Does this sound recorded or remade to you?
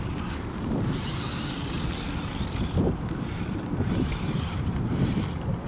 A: remade